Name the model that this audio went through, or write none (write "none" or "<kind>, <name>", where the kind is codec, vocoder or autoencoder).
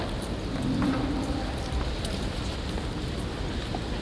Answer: none